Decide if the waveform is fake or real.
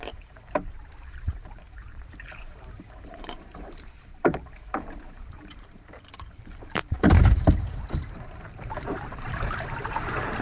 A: fake